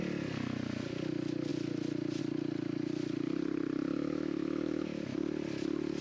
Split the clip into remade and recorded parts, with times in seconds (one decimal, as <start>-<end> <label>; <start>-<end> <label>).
0.0-3.9 recorded; 3.9-5.2 remade; 5.2-6.0 recorded